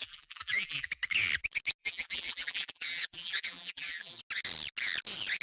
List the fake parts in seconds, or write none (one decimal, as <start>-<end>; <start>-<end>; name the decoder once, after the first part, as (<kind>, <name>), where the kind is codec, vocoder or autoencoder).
0.0-0.9 (vocoder, BigVGAN v2); 1.8-4.2